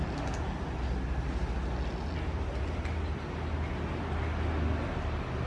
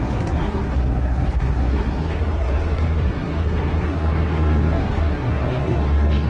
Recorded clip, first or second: first